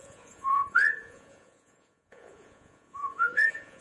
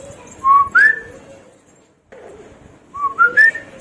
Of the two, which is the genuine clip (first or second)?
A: second